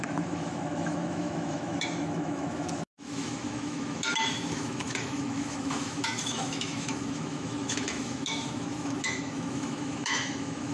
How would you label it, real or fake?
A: fake